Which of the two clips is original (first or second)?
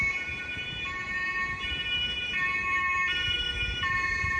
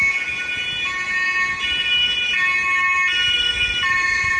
second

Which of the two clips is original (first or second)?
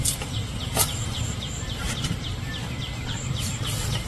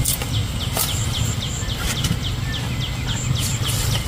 second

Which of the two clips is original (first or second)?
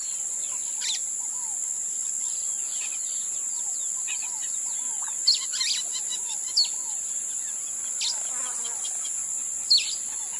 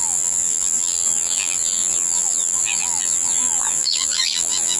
first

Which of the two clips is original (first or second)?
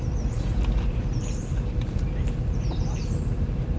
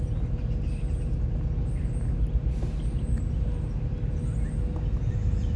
second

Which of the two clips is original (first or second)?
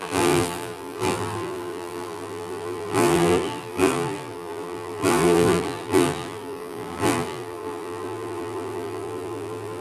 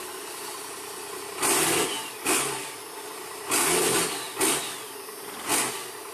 second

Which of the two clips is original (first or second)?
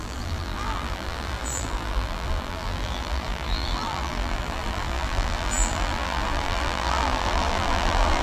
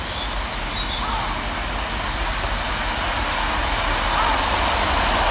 second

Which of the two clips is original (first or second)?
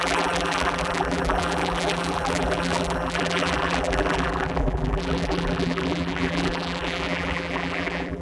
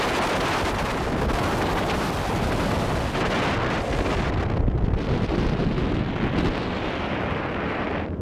second